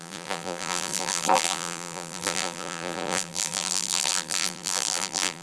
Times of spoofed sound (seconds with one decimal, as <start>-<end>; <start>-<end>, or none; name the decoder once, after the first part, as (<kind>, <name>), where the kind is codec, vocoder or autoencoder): 0.0-5.4 (vocoder, BigVGAN v2)